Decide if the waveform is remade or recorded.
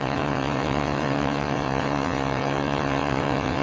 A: remade